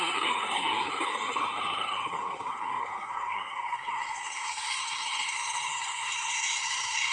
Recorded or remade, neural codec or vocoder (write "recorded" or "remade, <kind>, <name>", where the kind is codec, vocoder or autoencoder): remade, codec, SNAC